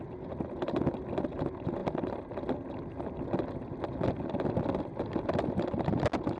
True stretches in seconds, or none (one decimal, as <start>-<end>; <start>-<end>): 0.0-6.4